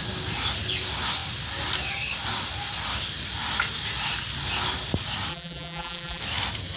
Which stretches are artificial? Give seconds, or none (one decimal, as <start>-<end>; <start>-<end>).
5.3-6.2